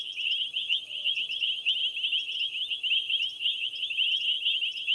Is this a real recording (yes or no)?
yes